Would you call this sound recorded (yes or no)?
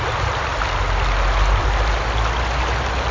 yes